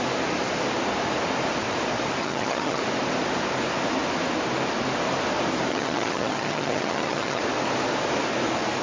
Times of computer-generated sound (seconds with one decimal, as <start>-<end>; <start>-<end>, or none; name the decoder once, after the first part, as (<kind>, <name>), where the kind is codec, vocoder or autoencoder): 2.2-2.8 (vocoder, HiFi-GAN); 5.7-7.4